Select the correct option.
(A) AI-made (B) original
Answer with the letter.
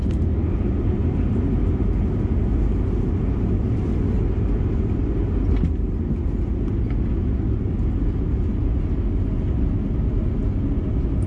B